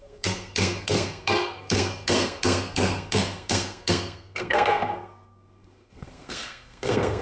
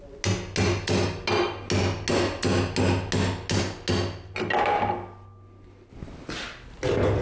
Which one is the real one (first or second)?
second